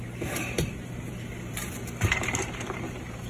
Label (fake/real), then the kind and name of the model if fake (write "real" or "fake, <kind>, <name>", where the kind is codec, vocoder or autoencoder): fake, vocoder, BigVGAN v2